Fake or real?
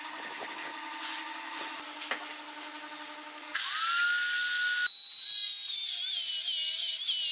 real